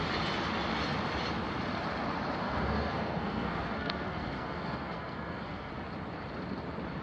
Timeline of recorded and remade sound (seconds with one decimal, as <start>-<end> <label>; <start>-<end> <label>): 0.0-2.4 recorded; 2.4-5.7 remade; 5.7-7.0 recorded